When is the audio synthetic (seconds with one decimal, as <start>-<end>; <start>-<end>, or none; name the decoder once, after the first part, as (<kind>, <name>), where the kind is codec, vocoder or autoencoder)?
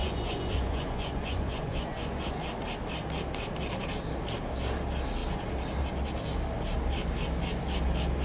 0.0-2.4 (vocoder, Vocos)